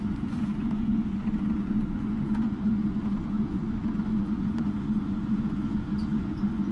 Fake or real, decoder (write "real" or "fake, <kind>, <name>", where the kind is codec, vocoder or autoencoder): fake, vocoder, Vocos